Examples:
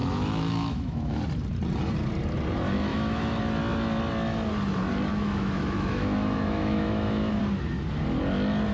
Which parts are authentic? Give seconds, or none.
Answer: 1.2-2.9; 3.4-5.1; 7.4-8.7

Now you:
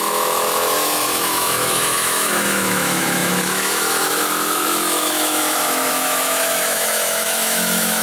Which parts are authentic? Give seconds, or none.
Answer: none

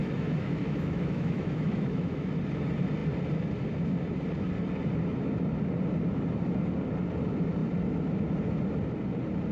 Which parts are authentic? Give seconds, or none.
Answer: 2.3-9.5

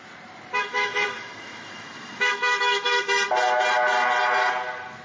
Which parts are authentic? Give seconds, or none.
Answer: 0.0-0.6; 3.0-5.0

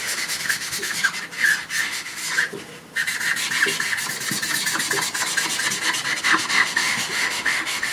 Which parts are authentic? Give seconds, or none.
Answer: 1.1-1.8; 2.2-6.2

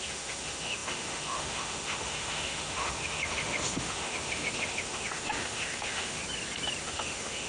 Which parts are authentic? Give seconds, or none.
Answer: 6.2-6.8

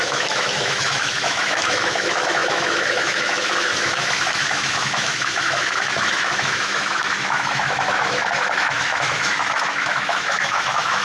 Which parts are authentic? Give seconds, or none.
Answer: none